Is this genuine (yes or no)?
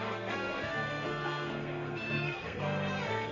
no